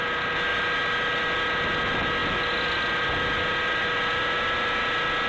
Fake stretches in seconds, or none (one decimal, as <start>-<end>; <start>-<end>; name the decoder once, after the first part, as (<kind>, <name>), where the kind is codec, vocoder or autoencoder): none